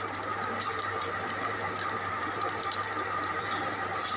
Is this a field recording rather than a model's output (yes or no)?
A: no